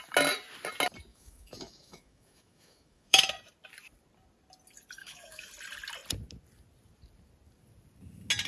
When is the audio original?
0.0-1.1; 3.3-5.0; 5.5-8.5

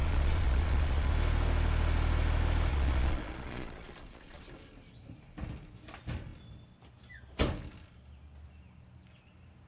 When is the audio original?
1.1-2.7; 4.4-9.7

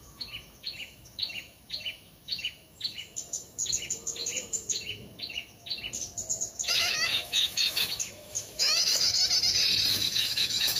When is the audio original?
5.7-6.5; 9.2-9.9

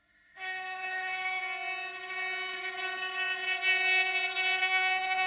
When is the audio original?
1.4-4.6

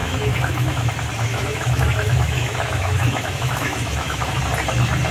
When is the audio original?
0.9-1.3; 4.4-5.1

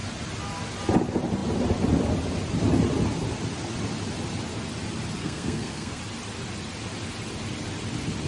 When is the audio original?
0.0-5.2; 6.0-8.3